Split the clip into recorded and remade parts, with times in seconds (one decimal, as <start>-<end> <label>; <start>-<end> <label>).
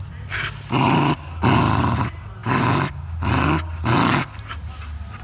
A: 0.0-5.2 recorded